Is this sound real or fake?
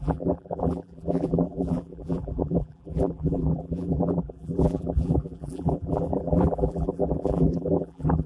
fake